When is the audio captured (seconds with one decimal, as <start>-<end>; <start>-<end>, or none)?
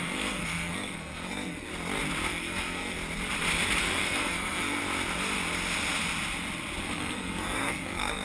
1.7-2.3; 3.0-3.8; 4.8-6.8